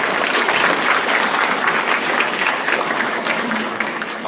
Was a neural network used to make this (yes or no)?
yes